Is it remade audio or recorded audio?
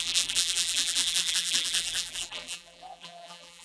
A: remade